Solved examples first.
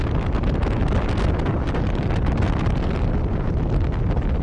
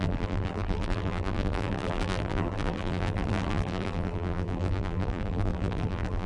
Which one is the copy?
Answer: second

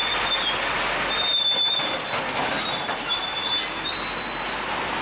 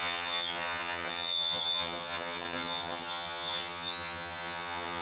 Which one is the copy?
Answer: second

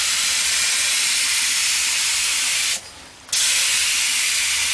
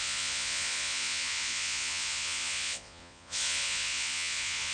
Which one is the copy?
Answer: second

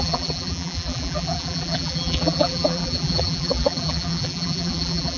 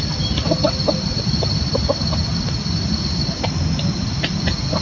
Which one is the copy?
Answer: first